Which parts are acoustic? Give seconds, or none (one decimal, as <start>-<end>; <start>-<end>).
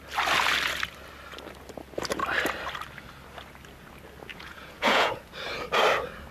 0.0-4.3; 5.1-6.3